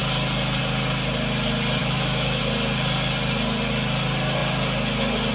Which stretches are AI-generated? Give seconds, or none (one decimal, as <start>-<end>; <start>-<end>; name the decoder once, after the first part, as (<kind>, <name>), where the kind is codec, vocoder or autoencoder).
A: 1.8-2.4 (autoencoder, DAC-VAE)